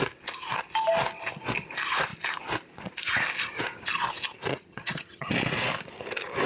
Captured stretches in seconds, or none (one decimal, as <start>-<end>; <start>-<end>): 0.0-4.5; 5.3-6.5